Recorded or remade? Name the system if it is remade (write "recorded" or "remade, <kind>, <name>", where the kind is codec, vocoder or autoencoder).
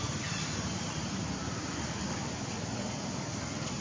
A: remade, vocoder, BigVGAN v2